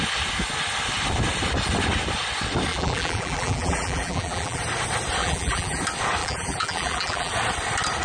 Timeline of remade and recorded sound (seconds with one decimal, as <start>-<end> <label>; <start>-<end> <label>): 0.0-2.7 recorded; 2.7-4.6 remade; 4.6-5.2 recorded; 5.2-5.8 remade; 5.8-6.2 recorded; 6.2-7.3 remade; 7.3-8.0 recorded

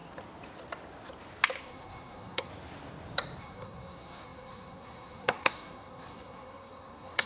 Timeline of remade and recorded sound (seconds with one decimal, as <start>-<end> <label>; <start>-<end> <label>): 0.0-1.6 recorded; 1.6-2.5 remade; 2.5-3.4 recorded; 3.4-7.3 remade

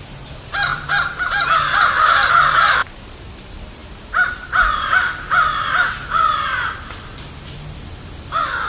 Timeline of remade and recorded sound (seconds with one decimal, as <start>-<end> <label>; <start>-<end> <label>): 0.0-8.7 remade

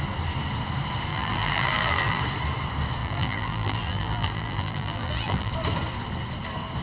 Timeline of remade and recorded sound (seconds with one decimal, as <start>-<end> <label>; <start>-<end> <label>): 0.0-1.1 recorded; 1.1-2.2 remade; 2.2-3.0 recorded; 3.0-5.5 remade; 5.5-6.8 recorded

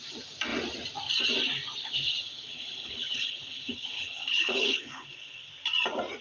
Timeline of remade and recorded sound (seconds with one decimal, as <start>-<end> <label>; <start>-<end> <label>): 0.0-1.8 recorded; 1.8-5.5 remade; 5.5-6.2 recorded

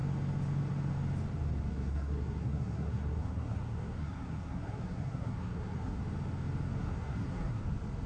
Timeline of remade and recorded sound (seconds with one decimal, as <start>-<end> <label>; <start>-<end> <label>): 0.0-1.7 recorded; 1.7-6.0 remade; 6.0-6.8 recorded; 6.8-7.6 remade; 7.6-8.1 recorded

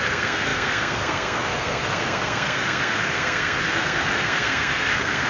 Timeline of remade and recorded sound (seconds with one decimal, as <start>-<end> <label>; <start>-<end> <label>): 0.0-5.3 remade

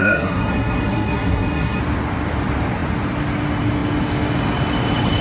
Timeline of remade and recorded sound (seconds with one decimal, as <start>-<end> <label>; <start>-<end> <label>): 0.0-1.8 remade; 1.8-5.2 recorded